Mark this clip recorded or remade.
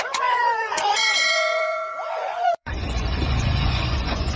remade